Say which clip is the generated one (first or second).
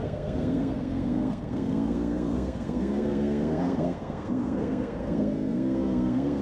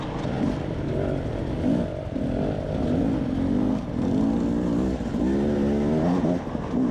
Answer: first